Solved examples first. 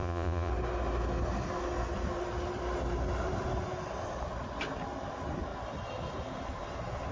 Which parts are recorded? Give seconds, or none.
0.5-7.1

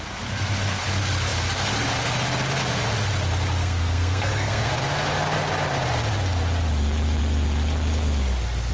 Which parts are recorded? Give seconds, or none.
0.0-3.6; 4.7-8.7

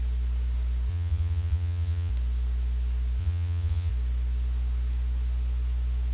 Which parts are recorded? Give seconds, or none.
0.0-0.9; 2.1-3.2; 3.9-6.1

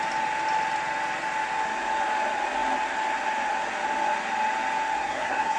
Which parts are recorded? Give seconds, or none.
0.0-5.0

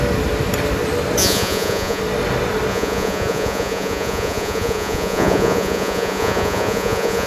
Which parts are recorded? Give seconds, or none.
0.0-1.2; 2.0-2.7

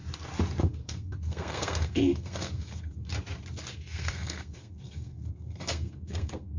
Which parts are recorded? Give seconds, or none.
0.0-0.6; 3.1-3.7